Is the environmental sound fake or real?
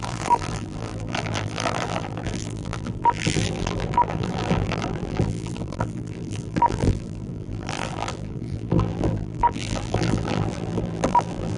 fake